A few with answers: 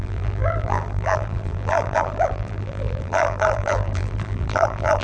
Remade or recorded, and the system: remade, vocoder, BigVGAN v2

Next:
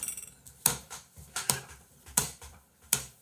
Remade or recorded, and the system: remade, vocoder, BigVGAN v2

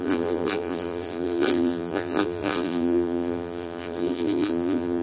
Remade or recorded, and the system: remade, vocoder, BigVGAN v2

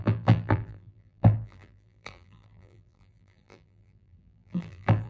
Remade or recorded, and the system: remade, vocoder, BigVGAN v2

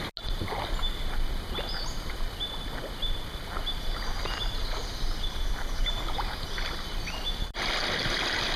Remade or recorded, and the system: recorded